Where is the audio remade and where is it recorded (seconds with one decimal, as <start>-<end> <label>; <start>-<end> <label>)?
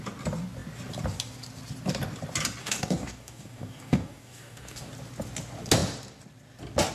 0.0-2.6 recorded; 2.6-4.9 remade; 4.9-6.9 recorded